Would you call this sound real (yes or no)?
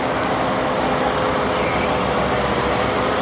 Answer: yes